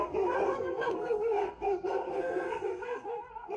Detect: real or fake fake